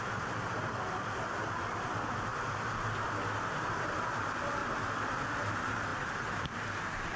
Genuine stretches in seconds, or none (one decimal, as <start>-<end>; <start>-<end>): 2.3-3.6; 4.6-5.4